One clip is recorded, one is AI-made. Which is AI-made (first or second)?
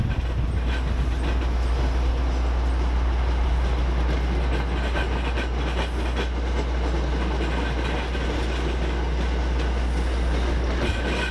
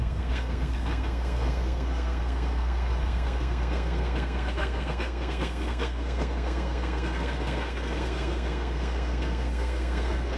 second